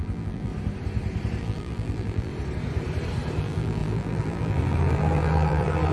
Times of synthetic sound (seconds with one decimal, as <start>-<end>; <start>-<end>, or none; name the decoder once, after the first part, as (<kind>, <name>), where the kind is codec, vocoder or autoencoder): 0.0-0.5 (vocoder, BigVGAN v2); 1.4-2.3; 3.4-5.9